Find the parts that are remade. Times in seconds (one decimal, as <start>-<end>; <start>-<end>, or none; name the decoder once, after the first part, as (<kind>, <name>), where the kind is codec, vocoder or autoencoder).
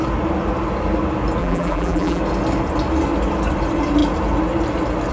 1.4-2.2 (vocoder, BigVGAN v2)